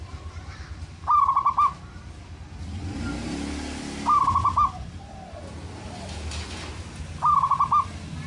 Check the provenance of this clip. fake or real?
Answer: real